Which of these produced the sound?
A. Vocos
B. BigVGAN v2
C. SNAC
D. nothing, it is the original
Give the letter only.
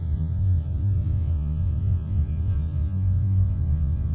A